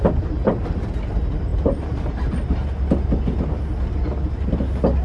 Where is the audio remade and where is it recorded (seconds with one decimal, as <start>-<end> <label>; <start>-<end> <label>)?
0.0-5.0 recorded